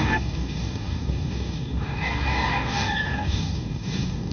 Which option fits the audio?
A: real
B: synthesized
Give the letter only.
B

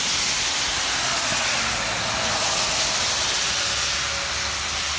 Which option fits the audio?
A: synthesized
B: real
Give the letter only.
B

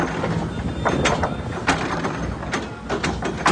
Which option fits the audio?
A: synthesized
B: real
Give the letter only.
B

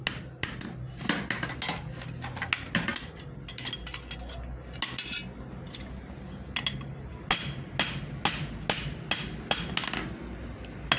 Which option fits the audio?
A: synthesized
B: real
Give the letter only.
B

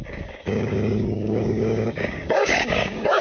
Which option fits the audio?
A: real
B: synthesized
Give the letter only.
B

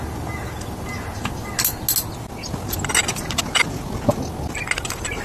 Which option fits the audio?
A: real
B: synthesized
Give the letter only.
A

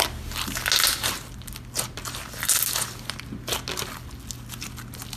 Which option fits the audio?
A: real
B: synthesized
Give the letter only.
A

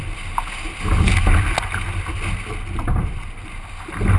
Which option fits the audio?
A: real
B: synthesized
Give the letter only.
A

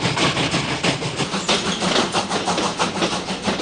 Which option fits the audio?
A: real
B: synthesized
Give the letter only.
A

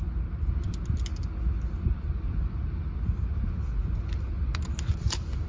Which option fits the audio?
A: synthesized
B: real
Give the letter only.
B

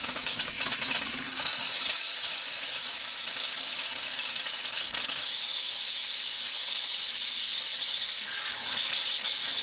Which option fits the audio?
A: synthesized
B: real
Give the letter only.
A